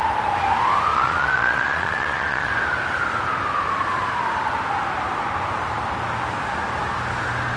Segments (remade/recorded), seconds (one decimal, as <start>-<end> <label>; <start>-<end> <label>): 0.0-0.9 recorded; 0.9-2.5 remade; 2.5-7.6 recorded